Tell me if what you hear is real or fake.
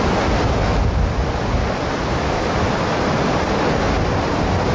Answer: real